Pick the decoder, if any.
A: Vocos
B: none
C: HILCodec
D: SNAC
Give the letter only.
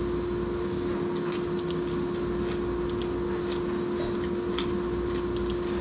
B